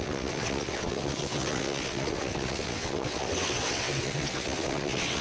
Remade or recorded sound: remade